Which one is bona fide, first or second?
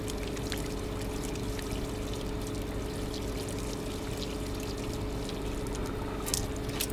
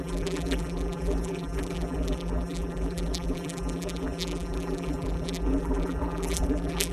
first